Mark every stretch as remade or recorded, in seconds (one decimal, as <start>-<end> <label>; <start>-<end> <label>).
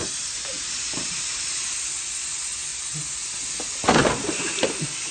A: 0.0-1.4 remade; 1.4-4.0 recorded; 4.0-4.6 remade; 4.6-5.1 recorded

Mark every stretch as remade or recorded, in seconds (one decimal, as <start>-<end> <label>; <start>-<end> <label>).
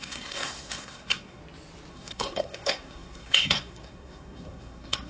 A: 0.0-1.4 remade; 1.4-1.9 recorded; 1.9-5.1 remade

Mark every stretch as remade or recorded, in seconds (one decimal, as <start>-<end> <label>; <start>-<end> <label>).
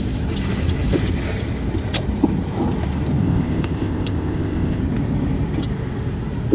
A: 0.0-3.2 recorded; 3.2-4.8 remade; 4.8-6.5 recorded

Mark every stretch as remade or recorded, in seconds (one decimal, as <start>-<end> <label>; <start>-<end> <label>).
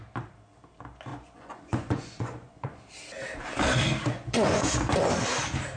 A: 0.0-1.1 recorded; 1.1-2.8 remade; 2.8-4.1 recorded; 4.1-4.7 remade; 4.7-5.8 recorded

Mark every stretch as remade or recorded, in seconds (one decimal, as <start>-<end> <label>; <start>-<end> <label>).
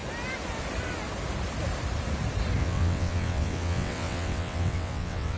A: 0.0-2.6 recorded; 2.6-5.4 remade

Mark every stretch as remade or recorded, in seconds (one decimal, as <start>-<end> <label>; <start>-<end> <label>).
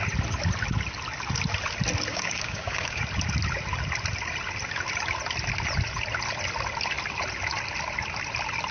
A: 0.0-2.1 recorded; 2.1-3.0 remade; 3.0-8.7 recorded